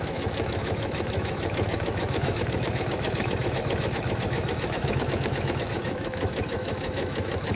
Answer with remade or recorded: remade